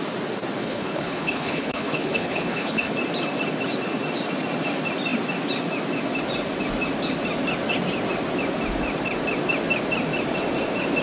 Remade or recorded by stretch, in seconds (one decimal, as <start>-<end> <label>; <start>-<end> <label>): 0.0-0.6 recorded; 0.6-2.9 remade; 2.9-11.0 recorded

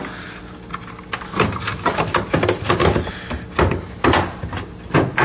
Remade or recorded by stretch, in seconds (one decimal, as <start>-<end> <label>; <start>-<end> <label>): 0.0-5.2 recorded

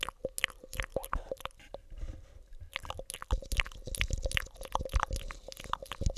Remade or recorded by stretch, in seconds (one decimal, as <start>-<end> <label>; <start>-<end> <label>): 0.0-6.2 recorded

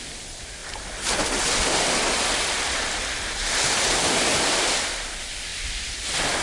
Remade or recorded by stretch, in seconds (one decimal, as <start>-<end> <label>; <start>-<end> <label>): 0.0-6.4 recorded

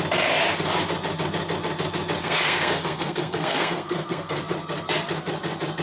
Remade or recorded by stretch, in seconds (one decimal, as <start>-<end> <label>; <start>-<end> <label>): 0.0-2.2 recorded; 2.2-4.4 remade; 4.4-5.8 recorded

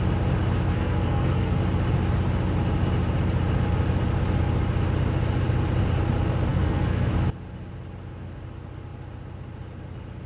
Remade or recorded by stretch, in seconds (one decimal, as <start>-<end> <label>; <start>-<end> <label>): 0.0-0.7 recorded; 0.7-1.6 remade; 1.6-6.5 recorded; 6.5-7.1 remade; 7.1-10.3 recorded

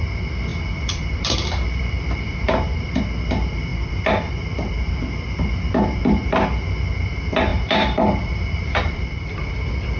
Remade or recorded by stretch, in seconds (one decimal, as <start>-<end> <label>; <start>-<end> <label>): 0.0-0.5 recorded; 0.5-3.0 remade; 3.0-3.7 recorded; 3.7-4.3 remade; 4.3-7.5 recorded; 7.5-9.5 remade; 9.5-10.0 recorded

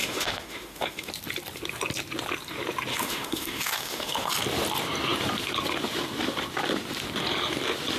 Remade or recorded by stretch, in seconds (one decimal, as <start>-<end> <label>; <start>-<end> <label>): 0.0-1.1 remade; 1.1-2.9 recorded; 2.9-4.3 remade; 4.3-8.0 recorded